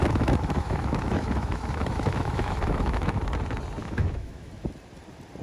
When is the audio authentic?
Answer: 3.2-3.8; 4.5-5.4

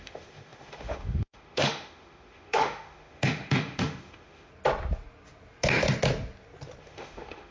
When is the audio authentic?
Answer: 4.5-6.8

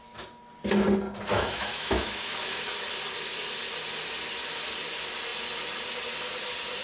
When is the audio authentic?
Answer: 0.0-1.3; 2.7-6.8

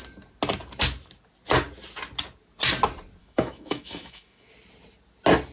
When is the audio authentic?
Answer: 0.0-3.2; 4.5-5.5